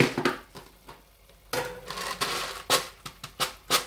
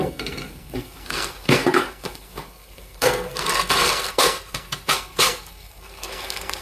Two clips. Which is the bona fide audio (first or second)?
first